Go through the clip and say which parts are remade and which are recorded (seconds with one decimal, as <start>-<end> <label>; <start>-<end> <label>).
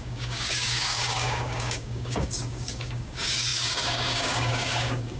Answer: 0.0-5.2 remade